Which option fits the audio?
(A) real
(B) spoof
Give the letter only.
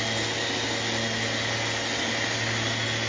A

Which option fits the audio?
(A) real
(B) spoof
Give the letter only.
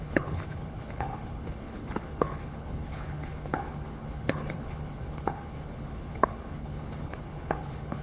B